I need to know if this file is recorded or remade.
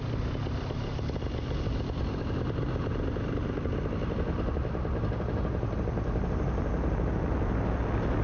recorded